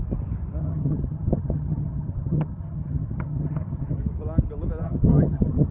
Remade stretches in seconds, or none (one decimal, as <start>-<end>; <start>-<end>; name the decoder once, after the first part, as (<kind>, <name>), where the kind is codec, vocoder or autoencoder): 0.6-4.0 (vocoder, HiFi-GAN); 4.8-5.7